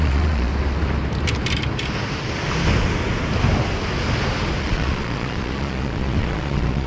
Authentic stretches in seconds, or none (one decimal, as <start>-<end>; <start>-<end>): 0.5-4.6